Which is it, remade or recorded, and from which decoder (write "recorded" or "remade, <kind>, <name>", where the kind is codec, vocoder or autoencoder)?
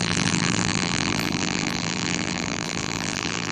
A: remade, vocoder, BigVGAN v2